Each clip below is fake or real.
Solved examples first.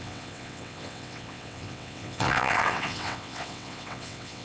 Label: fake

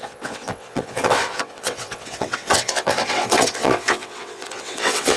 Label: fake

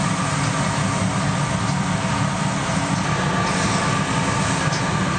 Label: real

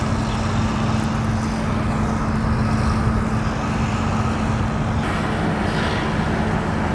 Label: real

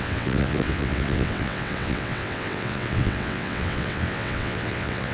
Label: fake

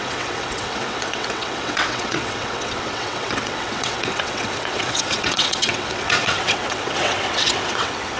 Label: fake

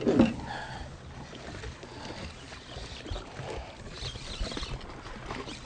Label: real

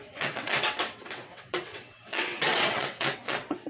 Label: fake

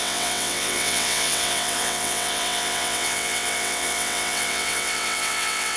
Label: fake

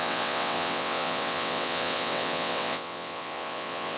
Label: fake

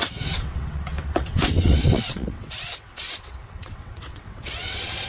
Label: fake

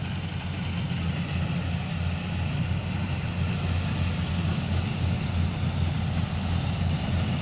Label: real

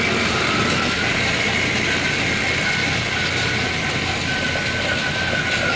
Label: real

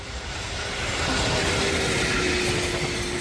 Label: real